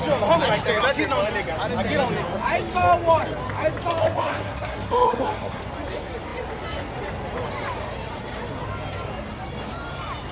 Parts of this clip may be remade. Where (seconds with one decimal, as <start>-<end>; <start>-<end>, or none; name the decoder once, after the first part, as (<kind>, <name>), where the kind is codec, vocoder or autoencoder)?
4.0-5.6 (codec, SNAC)